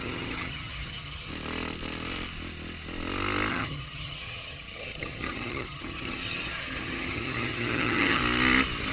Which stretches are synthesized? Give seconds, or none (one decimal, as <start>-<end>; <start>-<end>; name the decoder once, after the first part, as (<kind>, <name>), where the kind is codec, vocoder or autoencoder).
0.0-1.3 (vocoder, HiFi-GAN); 3.5-8.2